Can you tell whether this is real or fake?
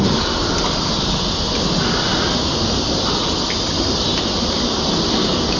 real